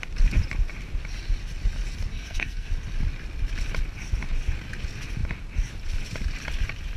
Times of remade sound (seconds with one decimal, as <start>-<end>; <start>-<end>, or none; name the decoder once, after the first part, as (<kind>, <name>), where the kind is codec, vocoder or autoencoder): 2.1-2.7 (codec, SNAC)